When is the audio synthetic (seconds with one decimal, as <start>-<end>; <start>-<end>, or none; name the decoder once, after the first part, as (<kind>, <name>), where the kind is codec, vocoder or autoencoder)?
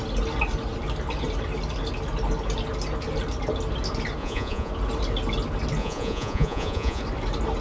4.2-4.7 (vocoder, Vocos); 5.8-7.0